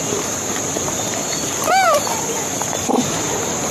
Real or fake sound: fake